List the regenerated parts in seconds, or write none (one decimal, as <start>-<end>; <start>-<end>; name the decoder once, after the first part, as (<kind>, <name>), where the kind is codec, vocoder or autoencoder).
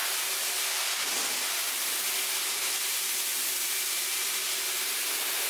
2.4-5.5 (vocoder, BigVGAN v2)